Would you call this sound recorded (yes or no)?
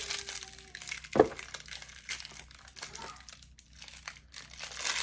yes